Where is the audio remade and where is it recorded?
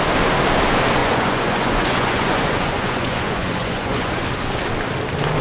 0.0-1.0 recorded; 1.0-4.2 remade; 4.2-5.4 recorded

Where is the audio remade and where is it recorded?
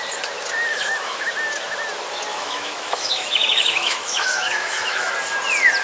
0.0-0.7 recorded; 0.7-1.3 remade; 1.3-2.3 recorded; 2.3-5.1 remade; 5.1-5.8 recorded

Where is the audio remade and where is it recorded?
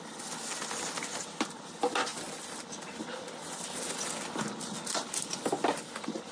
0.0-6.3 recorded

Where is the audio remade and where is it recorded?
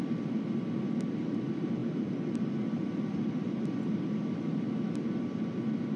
0.0-1.8 recorded; 1.8-4.4 remade; 4.4-6.0 recorded